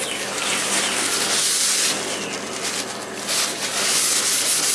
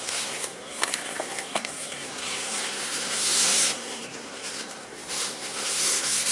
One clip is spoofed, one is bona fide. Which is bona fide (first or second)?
first